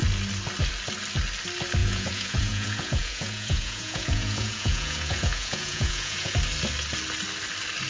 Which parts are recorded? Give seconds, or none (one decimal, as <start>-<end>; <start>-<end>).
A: 0.0-1.8; 6.3-7.9